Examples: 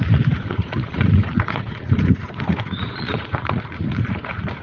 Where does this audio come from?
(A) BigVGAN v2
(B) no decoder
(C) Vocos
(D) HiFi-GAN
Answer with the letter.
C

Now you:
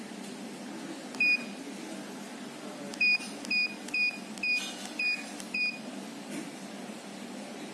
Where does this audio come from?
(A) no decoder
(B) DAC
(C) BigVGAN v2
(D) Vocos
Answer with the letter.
A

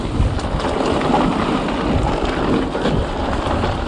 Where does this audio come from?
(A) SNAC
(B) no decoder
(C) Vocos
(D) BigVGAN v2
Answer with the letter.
B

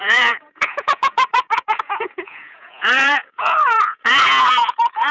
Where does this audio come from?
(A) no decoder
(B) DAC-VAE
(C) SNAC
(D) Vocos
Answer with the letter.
D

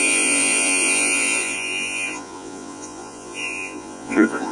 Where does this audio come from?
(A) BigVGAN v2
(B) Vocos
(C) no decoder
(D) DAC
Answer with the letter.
B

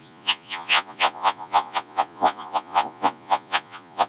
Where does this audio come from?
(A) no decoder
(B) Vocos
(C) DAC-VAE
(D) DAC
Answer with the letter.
B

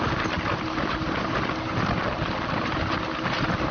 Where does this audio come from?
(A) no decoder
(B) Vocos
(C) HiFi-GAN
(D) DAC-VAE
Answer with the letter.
A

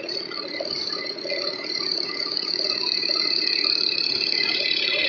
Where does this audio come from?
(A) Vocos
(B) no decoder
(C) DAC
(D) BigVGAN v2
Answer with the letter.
A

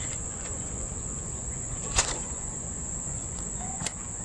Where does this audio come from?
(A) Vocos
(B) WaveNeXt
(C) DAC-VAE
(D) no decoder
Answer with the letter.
A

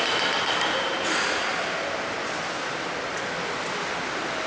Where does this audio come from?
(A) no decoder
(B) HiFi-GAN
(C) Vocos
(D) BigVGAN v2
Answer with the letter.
A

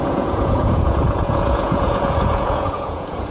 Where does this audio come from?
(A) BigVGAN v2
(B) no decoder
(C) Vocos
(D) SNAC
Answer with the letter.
C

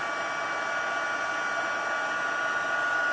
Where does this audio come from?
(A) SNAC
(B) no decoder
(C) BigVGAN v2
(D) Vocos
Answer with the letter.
B